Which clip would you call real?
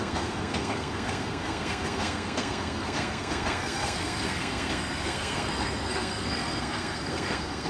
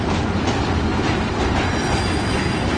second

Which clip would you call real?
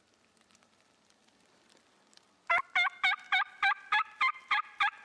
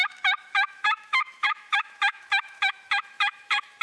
first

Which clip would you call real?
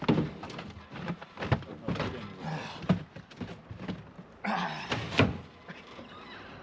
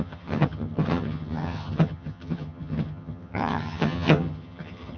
first